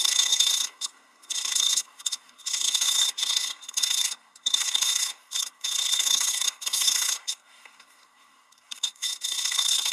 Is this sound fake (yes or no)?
yes